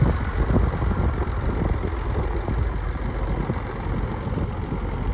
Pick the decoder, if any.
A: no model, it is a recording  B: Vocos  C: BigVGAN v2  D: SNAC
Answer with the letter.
A